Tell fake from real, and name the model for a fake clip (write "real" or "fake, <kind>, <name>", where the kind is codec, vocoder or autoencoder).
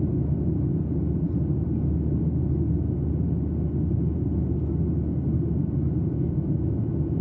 real